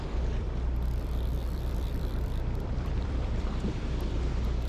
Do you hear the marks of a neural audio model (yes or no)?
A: yes